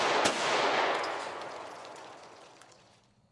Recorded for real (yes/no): no